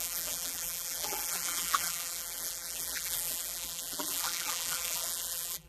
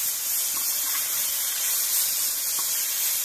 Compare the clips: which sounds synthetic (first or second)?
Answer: first